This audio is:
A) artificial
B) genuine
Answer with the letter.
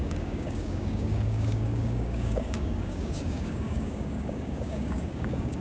A